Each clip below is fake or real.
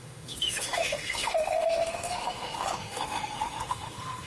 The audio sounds fake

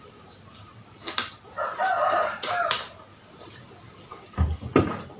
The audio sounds real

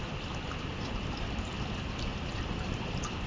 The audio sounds real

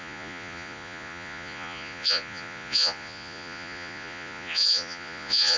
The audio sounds fake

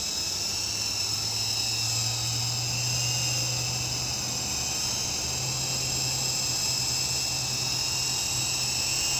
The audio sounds real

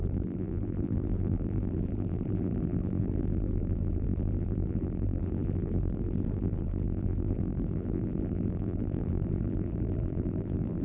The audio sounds fake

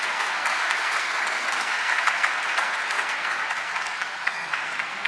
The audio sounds fake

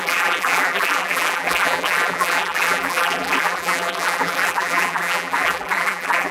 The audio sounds fake